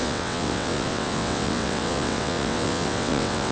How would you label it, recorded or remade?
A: remade